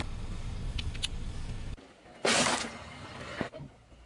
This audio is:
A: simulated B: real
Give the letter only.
B